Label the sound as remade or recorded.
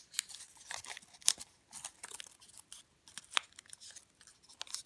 recorded